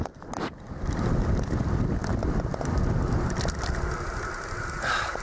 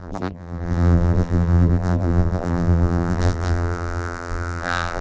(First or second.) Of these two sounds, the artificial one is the second